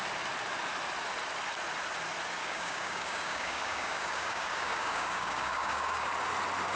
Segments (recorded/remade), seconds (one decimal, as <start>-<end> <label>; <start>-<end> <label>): 0.0-2.4 recorded; 2.4-6.1 remade; 6.1-6.8 recorded